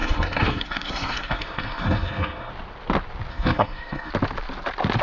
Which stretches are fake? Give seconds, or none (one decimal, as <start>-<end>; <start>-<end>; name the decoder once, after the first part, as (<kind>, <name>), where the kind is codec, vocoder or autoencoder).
0.0-2.5 (codec, SNAC); 3.3-4.1